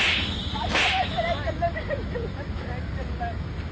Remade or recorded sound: recorded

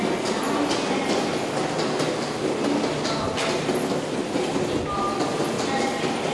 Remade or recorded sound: recorded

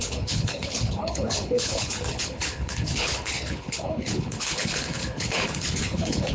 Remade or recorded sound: remade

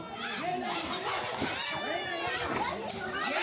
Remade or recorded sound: recorded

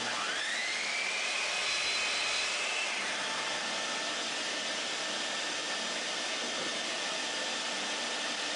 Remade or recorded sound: recorded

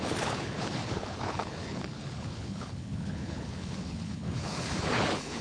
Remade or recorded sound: remade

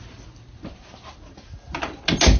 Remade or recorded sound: recorded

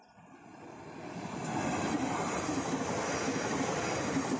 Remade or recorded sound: recorded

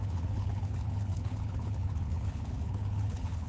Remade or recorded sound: remade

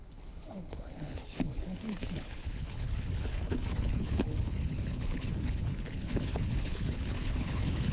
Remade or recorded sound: remade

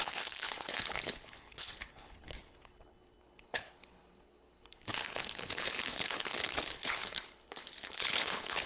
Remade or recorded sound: remade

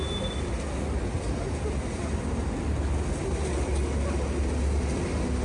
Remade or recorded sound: recorded